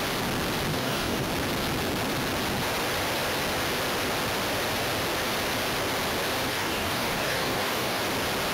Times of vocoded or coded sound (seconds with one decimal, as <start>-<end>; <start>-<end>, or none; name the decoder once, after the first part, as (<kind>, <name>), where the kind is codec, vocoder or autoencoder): 0.7-1.3 (codec, DAC); 6.5-8.0